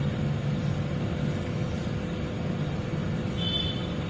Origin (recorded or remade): recorded